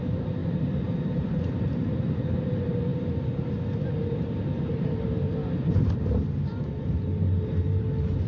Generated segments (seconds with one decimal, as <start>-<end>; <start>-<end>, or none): 0.0-5.4; 6.8-8.3